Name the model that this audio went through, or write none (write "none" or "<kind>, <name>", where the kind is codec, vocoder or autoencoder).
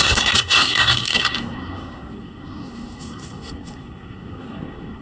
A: codec, SNAC